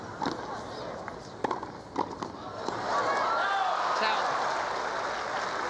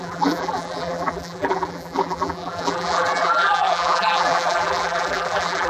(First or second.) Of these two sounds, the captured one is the first